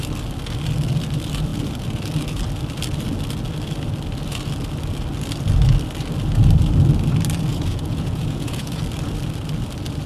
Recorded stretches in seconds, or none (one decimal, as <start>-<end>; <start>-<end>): 0.0-7.5; 8.8-10.1